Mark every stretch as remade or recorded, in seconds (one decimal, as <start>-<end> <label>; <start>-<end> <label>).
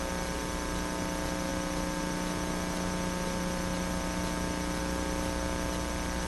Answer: 0.0-6.3 recorded